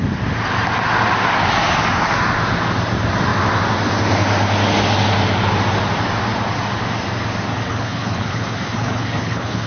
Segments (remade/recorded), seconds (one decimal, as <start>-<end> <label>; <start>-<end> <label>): 0.0-7.7 recorded; 7.7-9.7 remade

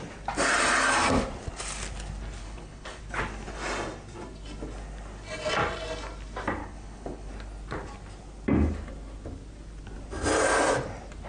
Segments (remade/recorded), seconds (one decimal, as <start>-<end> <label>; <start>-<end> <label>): 0.0-2.4 recorded; 2.4-3.0 remade; 3.0-6.6 recorded; 6.6-7.3 remade; 7.3-11.3 recorded

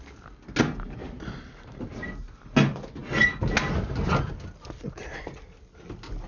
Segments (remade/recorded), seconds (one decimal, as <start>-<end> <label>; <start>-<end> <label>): 0.0-6.3 recorded

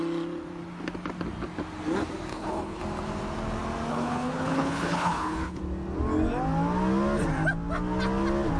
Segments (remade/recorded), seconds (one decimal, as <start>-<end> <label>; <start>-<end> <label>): 0.0-2.3 recorded; 2.3-2.8 remade; 2.8-3.9 recorded; 3.9-5.6 remade; 5.6-8.6 recorded

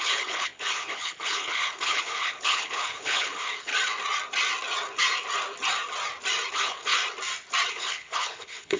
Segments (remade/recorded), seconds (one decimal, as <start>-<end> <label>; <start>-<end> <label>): 0.0-3.7 remade; 3.7-6.5 recorded; 6.5-7.0 remade; 7.0-7.7 recorded; 7.7-8.8 remade

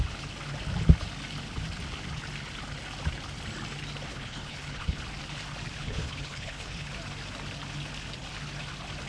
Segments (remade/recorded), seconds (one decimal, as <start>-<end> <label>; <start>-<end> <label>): 0.0-4.1 recorded; 4.1-5.0 remade; 5.0-5.8 recorded; 5.8-6.9 remade; 6.9-9.1 recorded

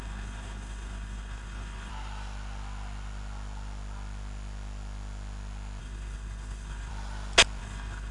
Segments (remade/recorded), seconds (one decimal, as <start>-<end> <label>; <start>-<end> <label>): 0.0-1.9 remade; 1.9-5.8 recorded; 5.8-6.9 remade; 6.9-7.6 recorded; 7.6-8.1 remade

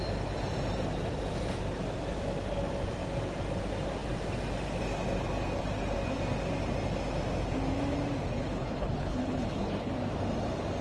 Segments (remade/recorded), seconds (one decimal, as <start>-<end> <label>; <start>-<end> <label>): 0.0-8.3 recorded; 8.3-9.9 remade; 9.9-10.8 recorded